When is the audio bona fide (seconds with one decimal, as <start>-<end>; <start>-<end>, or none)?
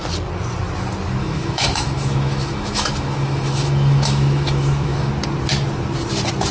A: 0.0-1.2; 5.1-6.5